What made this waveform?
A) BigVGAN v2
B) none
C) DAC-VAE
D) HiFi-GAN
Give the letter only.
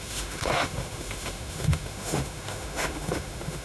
C